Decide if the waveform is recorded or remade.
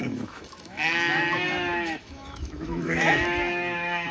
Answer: remade